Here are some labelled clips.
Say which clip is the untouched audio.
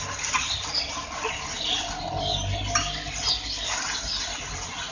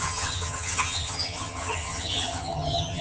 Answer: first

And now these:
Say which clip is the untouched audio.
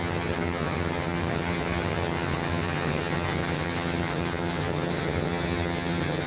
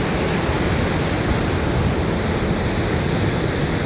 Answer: second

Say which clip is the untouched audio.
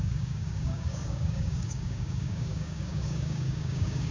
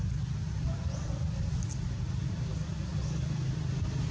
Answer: second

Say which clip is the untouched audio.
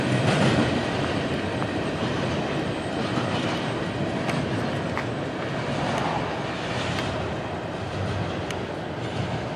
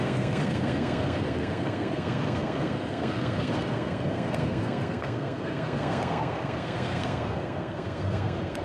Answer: first